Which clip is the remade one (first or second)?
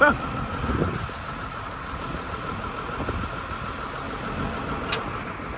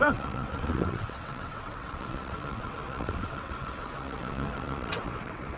second